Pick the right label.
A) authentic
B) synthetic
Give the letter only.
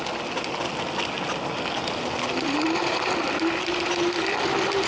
A